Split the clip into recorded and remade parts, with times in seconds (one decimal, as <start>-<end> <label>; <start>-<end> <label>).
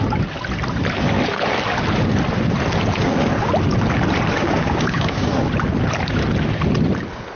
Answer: 0.0-4.4 recorded; 4.4-5.4 remade; 5.4-7.4 recorded